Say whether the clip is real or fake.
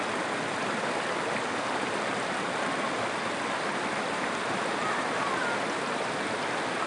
real